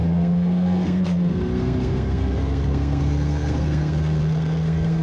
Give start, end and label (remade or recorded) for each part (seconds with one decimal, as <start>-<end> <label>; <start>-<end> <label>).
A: 0.0-5.0 remade